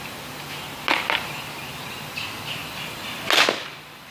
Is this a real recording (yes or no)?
yes